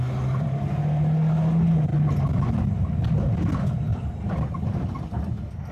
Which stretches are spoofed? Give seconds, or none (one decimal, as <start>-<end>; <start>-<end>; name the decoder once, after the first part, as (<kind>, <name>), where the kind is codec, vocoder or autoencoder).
none